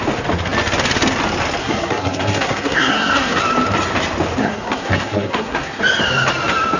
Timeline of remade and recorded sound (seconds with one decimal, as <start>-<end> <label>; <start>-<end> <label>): 0.0-1.6 recorded; 1.6-3.4 remade; 3.4-4.4 recorded; 4.4-5.8 remade; 5.8-6.8 recorded